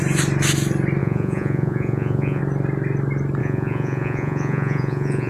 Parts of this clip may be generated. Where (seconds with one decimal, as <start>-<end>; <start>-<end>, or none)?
1.0-2.4; 3.4-5.3